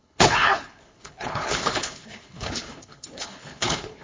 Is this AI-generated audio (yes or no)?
yes